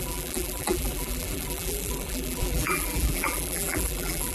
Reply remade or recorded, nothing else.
remade